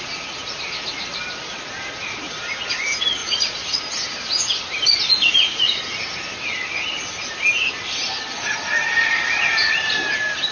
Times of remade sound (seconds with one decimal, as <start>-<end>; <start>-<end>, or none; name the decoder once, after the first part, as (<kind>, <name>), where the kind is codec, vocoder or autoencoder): 3.2-3.8 (vocoder, Vocos); 5.1-5.8